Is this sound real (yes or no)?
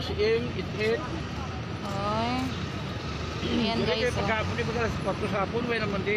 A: yes